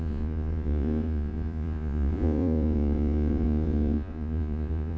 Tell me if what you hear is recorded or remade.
remade